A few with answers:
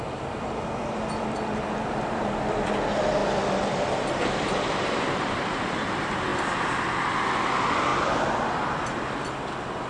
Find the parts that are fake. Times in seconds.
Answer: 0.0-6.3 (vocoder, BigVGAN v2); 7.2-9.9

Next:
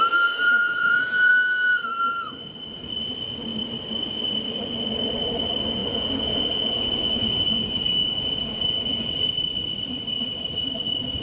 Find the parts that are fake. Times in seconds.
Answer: 0.4-1.3 (vocoder, Vocos); 5.8-9.1